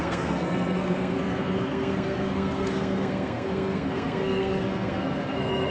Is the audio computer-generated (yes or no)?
yes